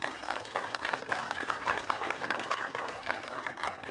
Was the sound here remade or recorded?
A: remade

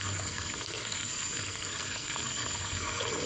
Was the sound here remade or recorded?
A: remade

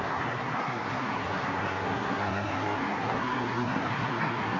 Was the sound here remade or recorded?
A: remade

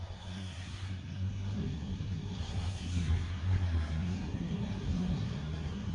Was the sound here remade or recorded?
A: remade